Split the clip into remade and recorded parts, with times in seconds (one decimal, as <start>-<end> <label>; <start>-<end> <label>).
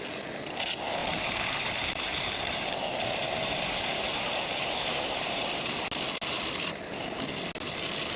0.0-1.0 recorded; 1.0-2.8 remade; 2.8-3.2 recorded; 3.2-5.8 remade; 5.8-8.2 recorded